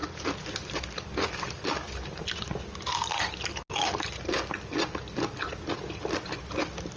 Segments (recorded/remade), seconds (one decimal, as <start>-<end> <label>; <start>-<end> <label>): 0.0-7.0 recorded